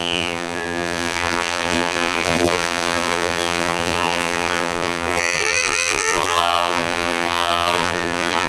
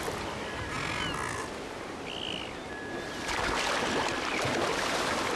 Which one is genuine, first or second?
second